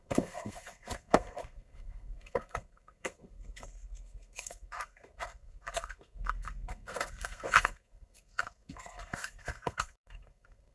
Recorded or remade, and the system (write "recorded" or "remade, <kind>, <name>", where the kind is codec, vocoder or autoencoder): remade, codec, SNAC